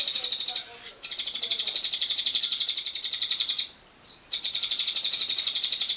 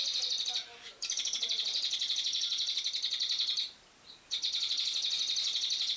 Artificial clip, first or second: first